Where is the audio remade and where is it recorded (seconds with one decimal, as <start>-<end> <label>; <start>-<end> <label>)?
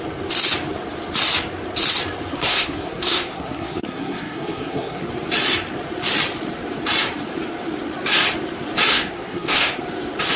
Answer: 0.0-2.3 recorded; 2.3-5.0 remade; 5.0-8.9 recorded; 8.9-9.8 remade; 9.8-10.4 recorded